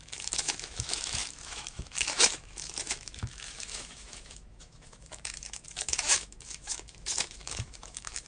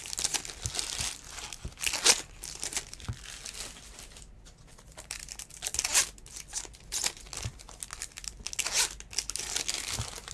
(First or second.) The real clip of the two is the second